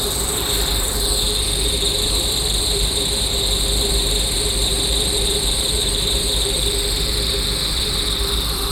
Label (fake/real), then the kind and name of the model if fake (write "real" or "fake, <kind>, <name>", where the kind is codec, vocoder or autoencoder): fake, vocoder, BigVGAN v2